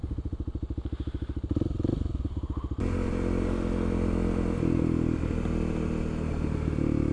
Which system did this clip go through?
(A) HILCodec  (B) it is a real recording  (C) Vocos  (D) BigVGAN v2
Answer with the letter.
B